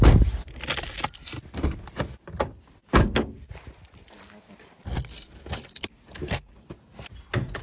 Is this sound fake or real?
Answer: real